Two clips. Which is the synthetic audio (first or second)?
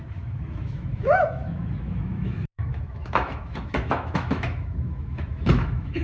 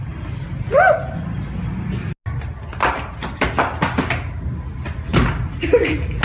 first